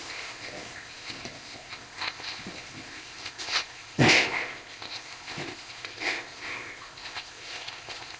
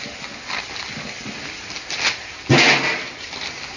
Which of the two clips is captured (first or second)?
second